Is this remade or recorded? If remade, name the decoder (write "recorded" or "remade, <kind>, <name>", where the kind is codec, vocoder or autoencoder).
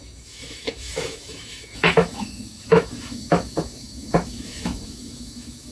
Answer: remade, autoencoder, DAC-VAE